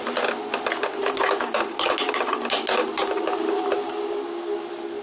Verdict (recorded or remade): recorded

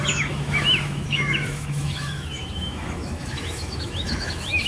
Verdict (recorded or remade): remade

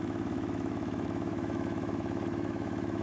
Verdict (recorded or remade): remade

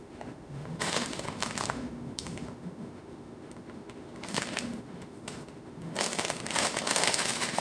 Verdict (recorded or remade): remade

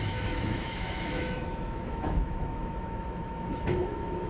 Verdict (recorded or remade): remade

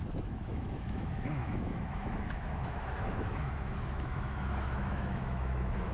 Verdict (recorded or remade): remade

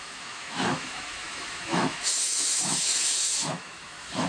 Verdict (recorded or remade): remade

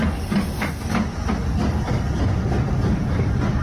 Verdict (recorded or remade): recorded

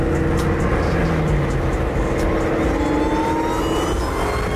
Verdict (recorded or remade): recorded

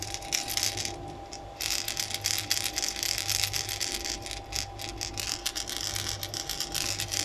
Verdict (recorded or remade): recorded